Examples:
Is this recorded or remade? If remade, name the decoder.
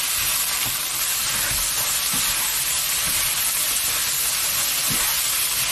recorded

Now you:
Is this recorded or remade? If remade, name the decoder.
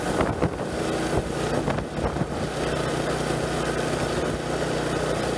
recorded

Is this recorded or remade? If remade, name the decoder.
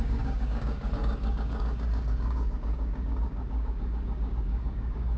remade, codec, DAC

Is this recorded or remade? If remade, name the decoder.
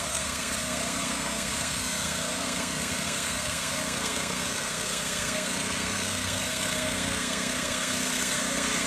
remade, codec, SNAC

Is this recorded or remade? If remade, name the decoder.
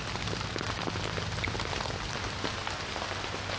recorded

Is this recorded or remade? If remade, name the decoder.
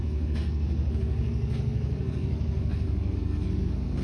remade, codec, SNAC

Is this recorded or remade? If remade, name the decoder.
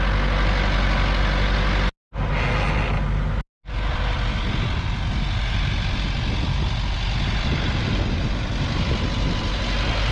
recorded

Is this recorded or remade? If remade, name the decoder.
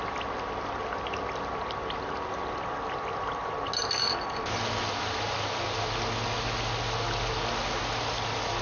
recorded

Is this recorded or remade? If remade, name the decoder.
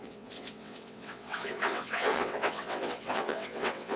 remade, vocoder, WaveNeXt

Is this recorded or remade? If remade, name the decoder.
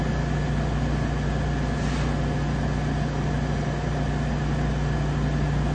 recorded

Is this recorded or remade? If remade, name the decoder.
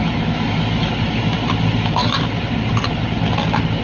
recorded